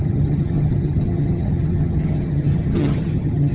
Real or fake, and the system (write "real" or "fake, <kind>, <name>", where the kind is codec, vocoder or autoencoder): fake, vocoder, HiFi-GAN